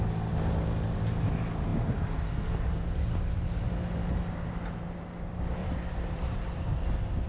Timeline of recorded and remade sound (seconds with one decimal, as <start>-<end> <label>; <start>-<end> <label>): 0.0-5.6 recorded; 5.6-6.7 remade; 6.7-7.3 recorded